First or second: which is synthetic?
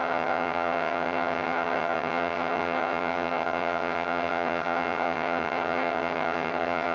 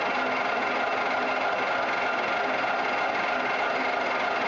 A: first